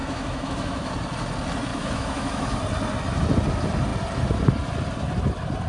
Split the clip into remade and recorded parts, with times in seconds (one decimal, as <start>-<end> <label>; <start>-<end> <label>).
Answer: 0.0-0.9 remade; 0.9-1.7 recorded; 1.7-2.6 remade; 2.6-5.7 recorded